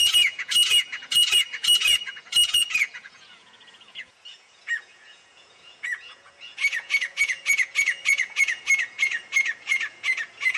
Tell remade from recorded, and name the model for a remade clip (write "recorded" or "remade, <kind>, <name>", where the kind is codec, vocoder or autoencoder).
remade, vocoder, Vocos